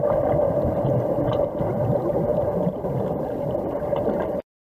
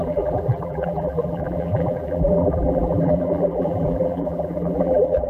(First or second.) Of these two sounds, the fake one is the second